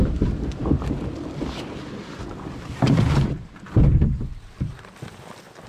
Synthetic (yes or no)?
no